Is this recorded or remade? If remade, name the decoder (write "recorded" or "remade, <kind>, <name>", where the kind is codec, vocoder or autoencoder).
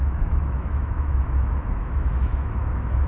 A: remade, autoencoder, DAC-VAE